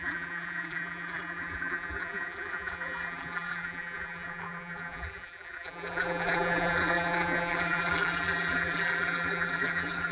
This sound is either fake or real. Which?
fake